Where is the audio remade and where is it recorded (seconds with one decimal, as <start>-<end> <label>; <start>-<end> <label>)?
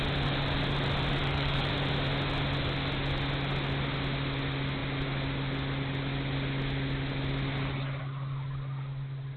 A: 0.0-1.2 recorded; 1.2-1.7 remade; 1.7-9.4 recorded